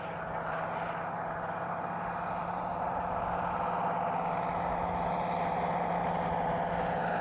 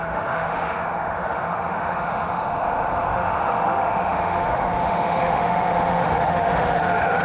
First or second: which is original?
first